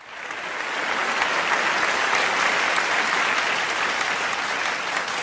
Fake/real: real